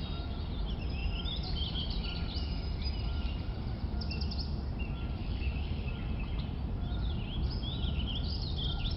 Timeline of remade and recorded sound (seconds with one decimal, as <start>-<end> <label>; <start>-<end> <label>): 0.0-5.2 recorded; 5.2-5.9 remade; 5.9-9.0 recorded